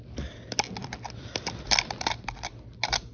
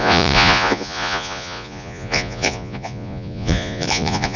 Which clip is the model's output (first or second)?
second